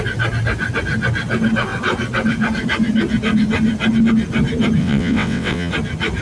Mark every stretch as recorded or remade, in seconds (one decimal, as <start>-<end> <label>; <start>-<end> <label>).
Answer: 0.0-4.8 recorded; 4.8-5.7 remade; 5.7-6.2 recorded